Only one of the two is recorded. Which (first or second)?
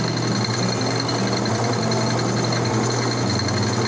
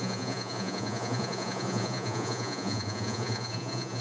first